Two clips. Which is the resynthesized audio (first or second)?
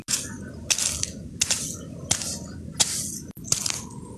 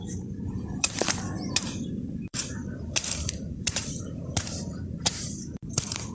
second